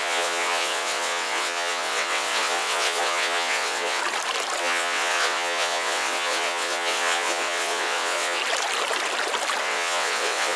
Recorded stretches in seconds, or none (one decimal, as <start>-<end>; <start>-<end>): 4.0-4.6; 8.4-9.6